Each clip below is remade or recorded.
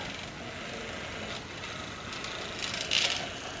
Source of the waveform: recorded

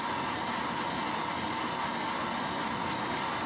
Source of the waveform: recorded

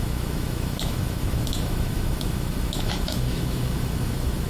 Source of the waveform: remade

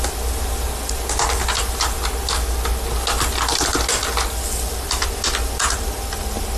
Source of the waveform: recorded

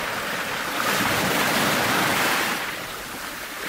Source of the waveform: remade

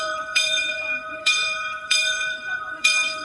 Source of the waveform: remade